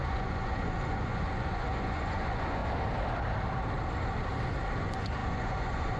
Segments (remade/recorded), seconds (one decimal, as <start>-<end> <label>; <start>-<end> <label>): 0.0-2.6 remade; 2.6-4.8 recorded; 4.8-6.0 remade